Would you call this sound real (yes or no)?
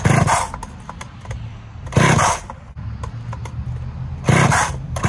yes